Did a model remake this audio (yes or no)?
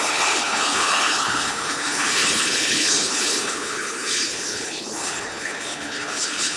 yes